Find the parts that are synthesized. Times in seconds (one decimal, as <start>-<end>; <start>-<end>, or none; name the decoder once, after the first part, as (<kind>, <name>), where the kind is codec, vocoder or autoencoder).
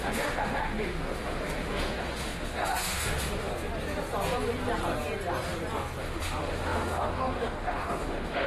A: 0.0-3.5 (autoencoder, DAC-VAE); 6.0-8.5